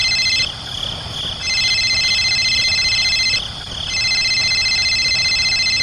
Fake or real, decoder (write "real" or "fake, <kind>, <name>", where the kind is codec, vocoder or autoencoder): real